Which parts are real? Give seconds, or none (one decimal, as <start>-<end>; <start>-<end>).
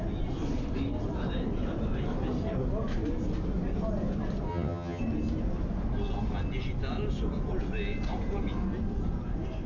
0.0-4.5; 5.0-9.7